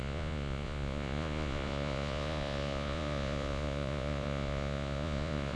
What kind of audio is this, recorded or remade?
remade